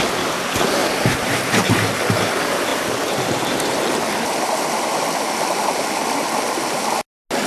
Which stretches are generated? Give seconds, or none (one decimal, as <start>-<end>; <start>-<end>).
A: 0.8-1.7; 2.7-4.1

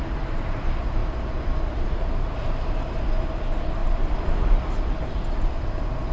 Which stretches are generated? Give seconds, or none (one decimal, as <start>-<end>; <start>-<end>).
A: none

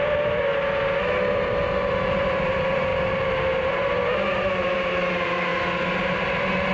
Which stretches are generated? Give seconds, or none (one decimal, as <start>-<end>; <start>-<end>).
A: 0.0-0.5; 1.3-2.9; 3.7-5.5; 6.0-6.7